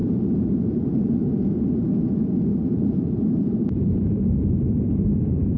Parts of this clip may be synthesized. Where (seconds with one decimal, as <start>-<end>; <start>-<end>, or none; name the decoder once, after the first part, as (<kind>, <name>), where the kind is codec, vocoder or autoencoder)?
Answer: 0.0-1.1 (vocoder, BigVGAN v2); 2.5-5.0